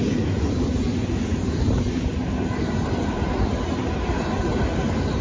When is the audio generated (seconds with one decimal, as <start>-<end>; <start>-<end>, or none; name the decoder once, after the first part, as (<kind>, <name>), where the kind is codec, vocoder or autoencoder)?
none